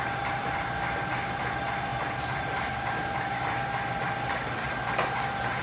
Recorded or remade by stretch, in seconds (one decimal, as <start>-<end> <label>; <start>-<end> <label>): 0.0-5.6 recorded